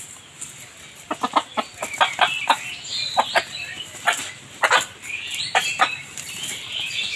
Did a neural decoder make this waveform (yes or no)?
no